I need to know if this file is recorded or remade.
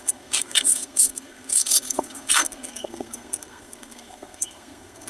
remade